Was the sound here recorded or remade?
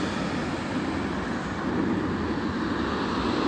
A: recorded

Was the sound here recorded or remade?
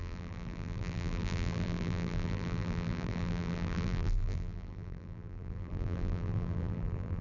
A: remade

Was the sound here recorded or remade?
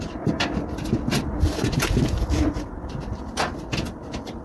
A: remade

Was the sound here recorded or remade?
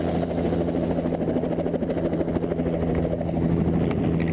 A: recorded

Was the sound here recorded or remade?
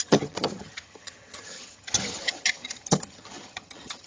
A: remade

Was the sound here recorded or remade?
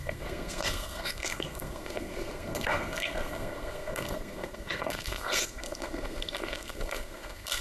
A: remade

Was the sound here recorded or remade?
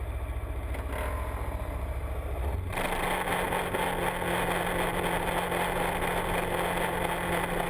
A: recorded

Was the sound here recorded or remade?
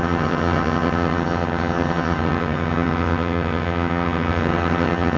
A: remade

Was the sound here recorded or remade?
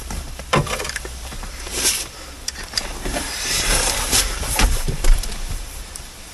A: remade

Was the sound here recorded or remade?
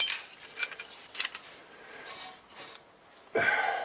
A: recorded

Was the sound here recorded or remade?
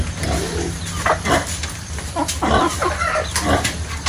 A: recorded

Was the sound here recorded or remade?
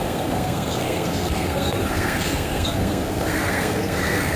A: remade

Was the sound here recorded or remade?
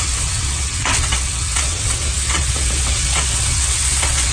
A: remade